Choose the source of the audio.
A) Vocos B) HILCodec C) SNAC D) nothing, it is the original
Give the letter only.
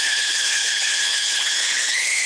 B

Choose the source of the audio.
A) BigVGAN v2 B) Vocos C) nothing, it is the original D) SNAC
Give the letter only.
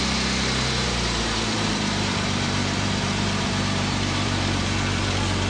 A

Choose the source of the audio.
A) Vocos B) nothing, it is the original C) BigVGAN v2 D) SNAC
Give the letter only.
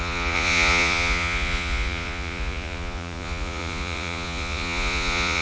A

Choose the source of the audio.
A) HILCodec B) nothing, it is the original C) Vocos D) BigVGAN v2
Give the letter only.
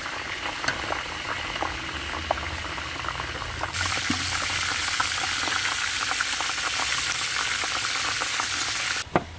B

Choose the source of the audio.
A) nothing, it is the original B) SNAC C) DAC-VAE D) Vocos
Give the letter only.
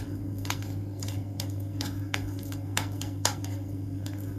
B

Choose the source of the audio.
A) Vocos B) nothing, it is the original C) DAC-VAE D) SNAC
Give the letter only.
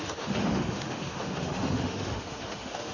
C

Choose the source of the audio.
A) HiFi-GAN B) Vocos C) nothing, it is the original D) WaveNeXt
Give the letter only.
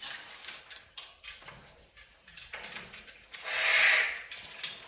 C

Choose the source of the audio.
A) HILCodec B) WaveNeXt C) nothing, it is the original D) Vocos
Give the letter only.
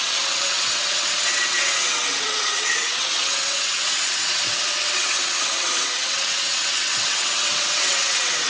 B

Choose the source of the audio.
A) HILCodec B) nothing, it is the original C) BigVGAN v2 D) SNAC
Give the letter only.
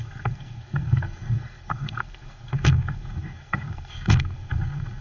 D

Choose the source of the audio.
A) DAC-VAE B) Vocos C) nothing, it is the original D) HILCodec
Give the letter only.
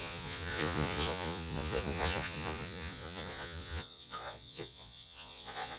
B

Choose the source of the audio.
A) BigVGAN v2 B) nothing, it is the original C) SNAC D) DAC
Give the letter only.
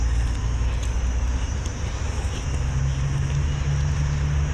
B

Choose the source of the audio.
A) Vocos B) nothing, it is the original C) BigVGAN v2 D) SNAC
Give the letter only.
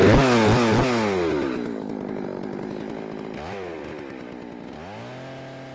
B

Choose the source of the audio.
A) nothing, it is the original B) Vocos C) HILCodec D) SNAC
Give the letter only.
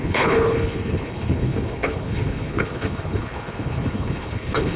C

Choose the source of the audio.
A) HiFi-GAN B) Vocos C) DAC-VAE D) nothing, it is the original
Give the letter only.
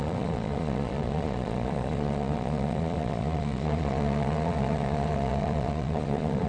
B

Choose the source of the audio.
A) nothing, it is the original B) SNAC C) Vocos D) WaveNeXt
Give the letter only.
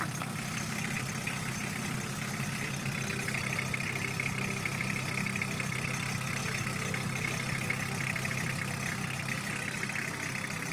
A